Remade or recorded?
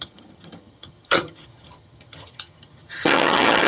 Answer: remade